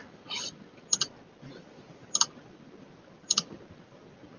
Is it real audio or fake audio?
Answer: real